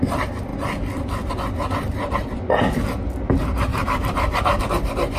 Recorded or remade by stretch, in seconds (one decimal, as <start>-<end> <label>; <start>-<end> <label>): 0.0-2.3 remade; 2.3-3.3 recorded; 3.3-5.2 remade